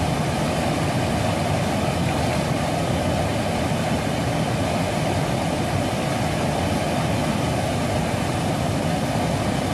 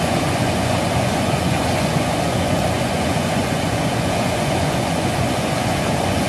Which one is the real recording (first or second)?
first